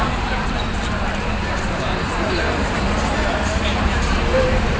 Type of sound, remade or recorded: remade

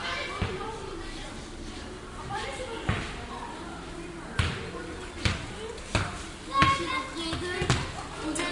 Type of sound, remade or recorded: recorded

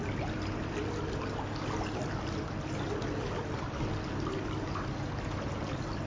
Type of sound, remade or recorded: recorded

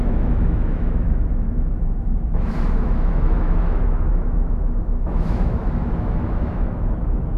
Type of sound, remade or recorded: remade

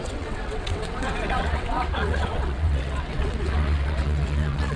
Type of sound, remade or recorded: remade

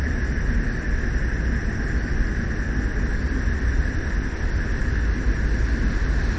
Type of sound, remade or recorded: recorded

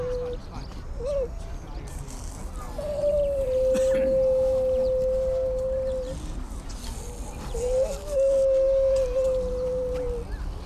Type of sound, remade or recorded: recorded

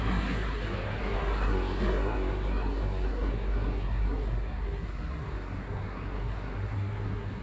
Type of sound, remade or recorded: remade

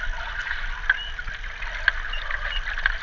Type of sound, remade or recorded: recorded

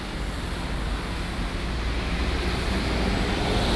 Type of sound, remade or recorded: recorded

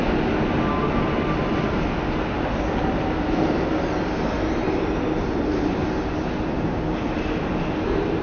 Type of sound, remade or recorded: recorded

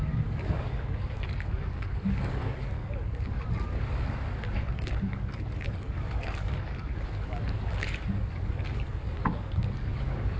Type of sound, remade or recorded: remade